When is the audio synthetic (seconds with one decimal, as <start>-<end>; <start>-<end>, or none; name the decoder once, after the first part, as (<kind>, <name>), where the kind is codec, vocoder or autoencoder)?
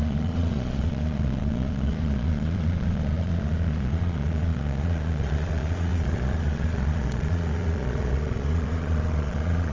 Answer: 0.0-9.7 (vocoder, Vocos)